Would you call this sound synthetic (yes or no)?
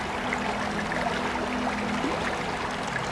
no